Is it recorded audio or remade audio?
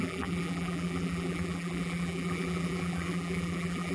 remade